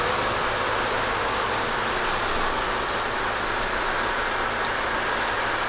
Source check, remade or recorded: recorded